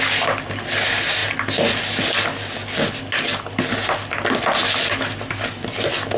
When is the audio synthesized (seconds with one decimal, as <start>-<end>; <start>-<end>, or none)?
none